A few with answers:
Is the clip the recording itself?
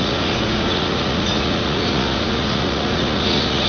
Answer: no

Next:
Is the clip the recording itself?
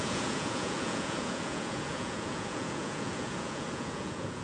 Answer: no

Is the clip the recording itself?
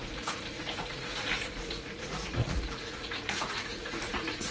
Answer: no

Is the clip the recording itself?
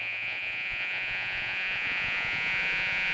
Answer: no